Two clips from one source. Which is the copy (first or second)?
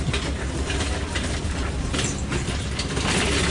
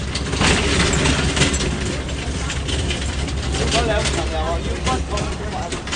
first